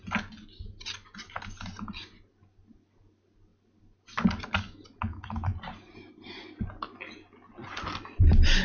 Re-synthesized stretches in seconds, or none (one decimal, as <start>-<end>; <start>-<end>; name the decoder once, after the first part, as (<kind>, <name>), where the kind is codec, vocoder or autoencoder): none